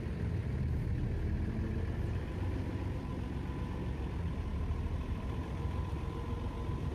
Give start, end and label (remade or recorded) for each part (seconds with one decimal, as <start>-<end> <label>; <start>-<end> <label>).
0.0-0.4 remade; 0.4-2.2 recorded; 2.2-3.1 remade; 3.1-3.6 recorded; 3.6-6.9 remade